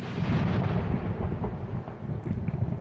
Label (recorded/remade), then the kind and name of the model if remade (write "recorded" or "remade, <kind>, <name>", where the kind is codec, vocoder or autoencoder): recorded